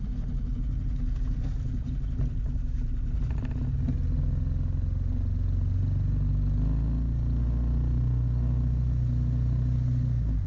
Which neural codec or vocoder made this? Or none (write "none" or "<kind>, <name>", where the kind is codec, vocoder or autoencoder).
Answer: none